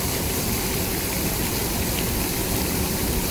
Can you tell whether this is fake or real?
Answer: real